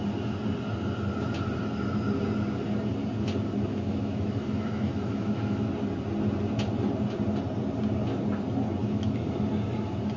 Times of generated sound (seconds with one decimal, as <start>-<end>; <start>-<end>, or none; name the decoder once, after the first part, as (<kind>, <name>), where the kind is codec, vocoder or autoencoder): 3.7-5.7 (autoencoder, DAC-VAE); 8.8-9.4